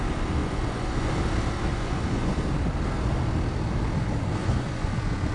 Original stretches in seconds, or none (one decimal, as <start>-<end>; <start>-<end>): 0.0-0.4; 1.1-1.7; 2.3-4.4